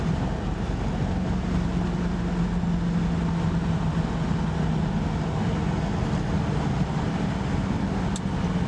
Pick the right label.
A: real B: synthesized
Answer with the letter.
A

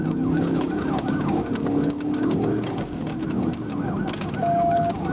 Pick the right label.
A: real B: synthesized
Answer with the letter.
B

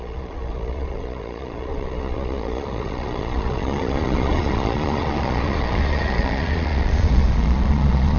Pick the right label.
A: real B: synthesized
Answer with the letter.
B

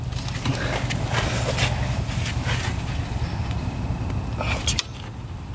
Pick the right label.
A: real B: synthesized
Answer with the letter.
A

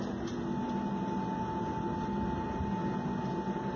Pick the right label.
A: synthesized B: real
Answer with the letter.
B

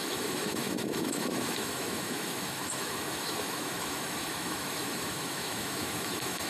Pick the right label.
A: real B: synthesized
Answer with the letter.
B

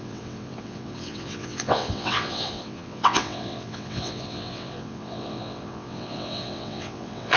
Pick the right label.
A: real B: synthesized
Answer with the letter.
B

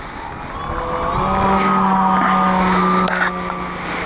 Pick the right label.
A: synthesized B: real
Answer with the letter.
B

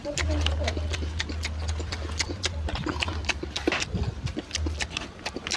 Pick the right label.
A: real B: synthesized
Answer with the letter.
A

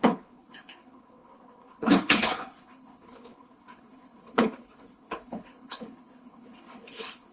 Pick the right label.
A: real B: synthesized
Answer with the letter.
B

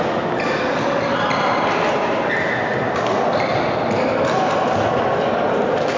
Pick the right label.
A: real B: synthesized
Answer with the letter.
A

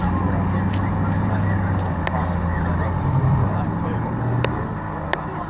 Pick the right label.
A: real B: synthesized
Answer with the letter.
A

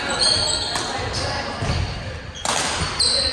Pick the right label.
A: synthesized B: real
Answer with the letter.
B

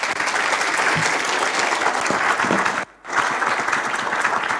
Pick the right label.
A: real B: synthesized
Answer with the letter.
A